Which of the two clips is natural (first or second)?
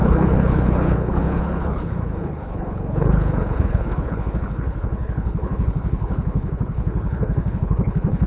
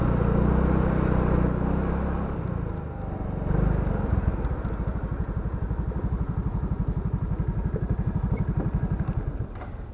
second